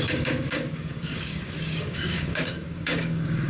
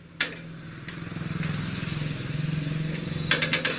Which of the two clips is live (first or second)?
second